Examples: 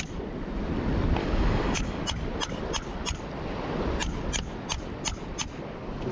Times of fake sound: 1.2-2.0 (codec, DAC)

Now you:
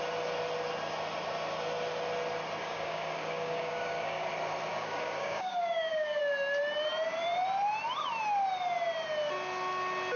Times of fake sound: 2.6-4.3 (codec, DAC); 4.7-6.2

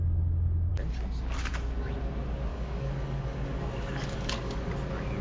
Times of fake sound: 2.5-4.7 (codec, DAC)